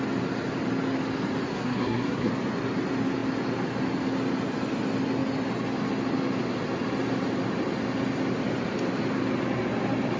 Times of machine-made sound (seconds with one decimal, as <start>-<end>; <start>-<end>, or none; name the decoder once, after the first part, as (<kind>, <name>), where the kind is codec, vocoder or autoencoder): 1.5-2.3 (codec, SNAC)

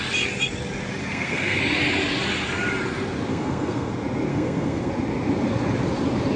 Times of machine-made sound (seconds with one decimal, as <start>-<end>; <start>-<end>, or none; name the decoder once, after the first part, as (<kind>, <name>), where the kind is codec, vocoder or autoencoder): 1.0-1.6 (codec, SNAC); 3.3-3.9; 4.3-4.9

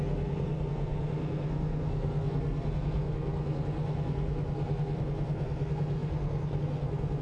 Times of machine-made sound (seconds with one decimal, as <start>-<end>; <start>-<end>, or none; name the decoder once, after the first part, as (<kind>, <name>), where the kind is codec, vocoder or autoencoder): 0.0-7.2 (codec, SNAC)

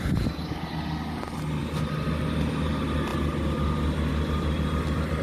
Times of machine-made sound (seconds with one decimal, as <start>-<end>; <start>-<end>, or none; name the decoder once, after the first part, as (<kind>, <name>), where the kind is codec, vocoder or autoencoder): none

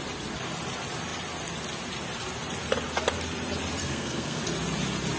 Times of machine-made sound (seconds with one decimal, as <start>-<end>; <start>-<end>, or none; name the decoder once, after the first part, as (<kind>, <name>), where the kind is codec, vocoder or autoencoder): 3.8-4.4 (codec, SNAC)

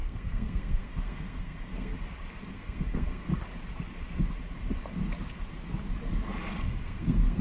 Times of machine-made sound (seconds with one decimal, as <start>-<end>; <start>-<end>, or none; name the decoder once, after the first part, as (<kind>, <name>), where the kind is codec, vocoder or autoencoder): 0.0-1.9 (codec, SNAC); 2.5-3.3; 6.8-7.4

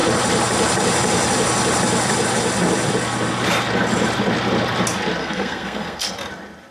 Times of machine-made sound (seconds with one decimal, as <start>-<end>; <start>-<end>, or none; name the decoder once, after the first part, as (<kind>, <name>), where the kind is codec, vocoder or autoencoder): 5.2-6.1 (codec, SNAC)